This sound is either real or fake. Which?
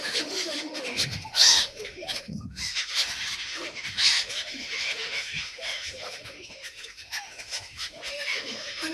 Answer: fake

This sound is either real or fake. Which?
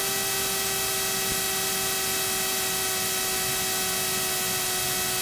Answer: real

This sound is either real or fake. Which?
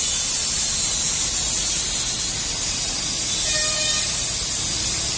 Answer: real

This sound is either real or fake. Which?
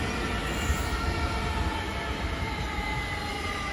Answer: real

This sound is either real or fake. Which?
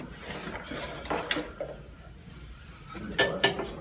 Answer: real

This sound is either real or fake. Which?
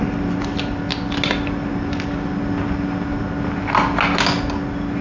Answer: real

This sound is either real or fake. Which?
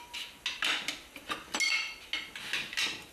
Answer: real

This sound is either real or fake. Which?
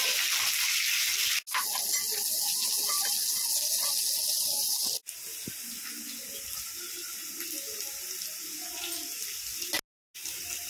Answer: real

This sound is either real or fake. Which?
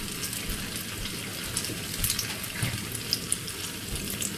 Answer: real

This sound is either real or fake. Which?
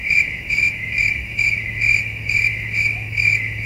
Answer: fake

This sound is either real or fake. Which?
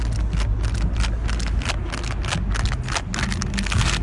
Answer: real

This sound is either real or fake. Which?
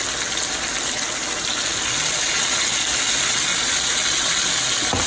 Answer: real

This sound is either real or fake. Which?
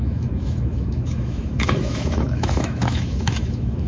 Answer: fake